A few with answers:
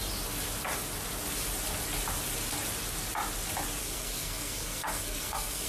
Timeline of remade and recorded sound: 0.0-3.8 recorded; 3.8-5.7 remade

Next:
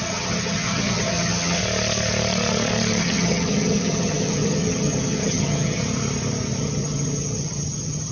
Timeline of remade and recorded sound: 0.0-1.6 remade; 1.6-3.0 recorded; 3.0-5.8 remade; 5.8-6.6 recorded; 6.6-8.1 remade

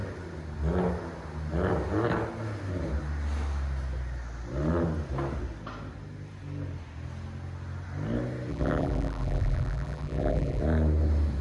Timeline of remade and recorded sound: 0.0-8.5 recorded; 8.5-10.6 remade; 10.6-11.4 recorded

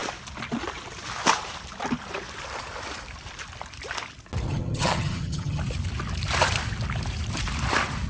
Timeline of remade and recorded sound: 0.0-4.5 recorded; 4.5-5.6 remade; 5.6-8.1 recorded

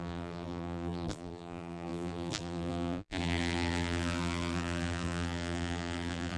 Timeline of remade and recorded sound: 0.0-6.4 remade

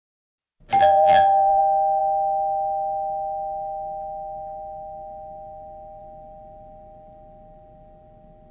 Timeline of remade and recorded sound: 0.0-0.8 recorded; 0.8-1.6 remade; 1.6-8.5 recorded

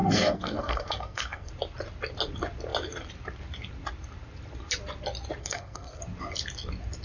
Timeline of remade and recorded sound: 0.0-1.5 remade; 1.5-5.4 recorded; 5.4-6.0 remade; 6.0-7.0 recorded

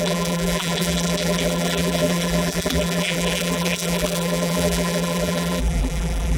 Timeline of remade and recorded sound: 0.0-6.4 remade